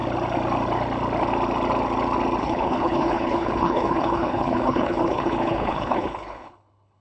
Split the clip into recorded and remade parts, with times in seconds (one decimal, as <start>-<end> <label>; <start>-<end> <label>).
0.0-2.4 recorded; 2.4-7.0 remade